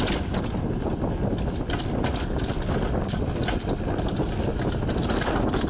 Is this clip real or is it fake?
real